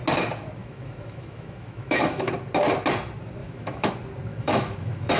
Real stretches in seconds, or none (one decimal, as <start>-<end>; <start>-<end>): 0.0-0.6; 2.3-3.4; 3.9-4.3